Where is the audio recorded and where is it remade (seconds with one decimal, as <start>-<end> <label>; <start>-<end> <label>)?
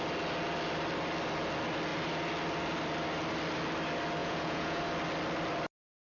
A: 0.0-4.2 recorded; 4.2-4.8 remade; 4.8-6.2 recorded